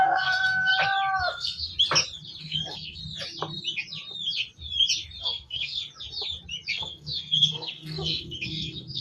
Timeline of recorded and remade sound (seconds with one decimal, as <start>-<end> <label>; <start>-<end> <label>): 0.0-0.7 remade; 0.7-1.2 recorded; 1.2-1.7 remade; 1.7-2.4 recorded; 2.4-3.0 remade; 3.0-5.2 recorded; 5.2-5.8 remade; 5.8-6.7 recorded; 6.7-9.0 remade